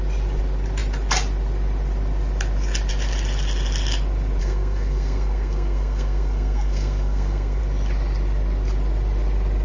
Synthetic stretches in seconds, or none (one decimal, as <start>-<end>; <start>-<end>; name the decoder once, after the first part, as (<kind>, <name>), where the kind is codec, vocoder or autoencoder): 4.4-7.6 (codec, SNAC)